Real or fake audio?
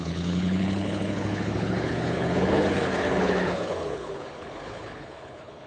fake